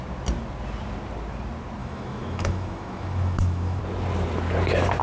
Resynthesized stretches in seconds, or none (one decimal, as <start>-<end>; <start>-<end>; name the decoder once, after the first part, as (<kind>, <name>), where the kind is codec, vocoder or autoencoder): 1.8-3.8 (autoencoder, DAC-VAE)